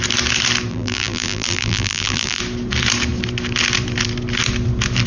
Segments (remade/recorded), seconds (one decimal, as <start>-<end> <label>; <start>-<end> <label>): 0.0-0.7 recorded; 0.7-2.4 remade; 2.4-5.1 recorded